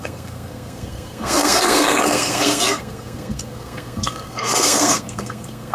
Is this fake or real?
fake